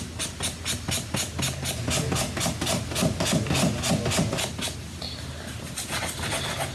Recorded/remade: recorded